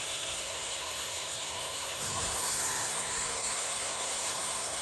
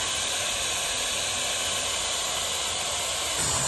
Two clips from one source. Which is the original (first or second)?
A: second